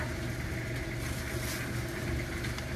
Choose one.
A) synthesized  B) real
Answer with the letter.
B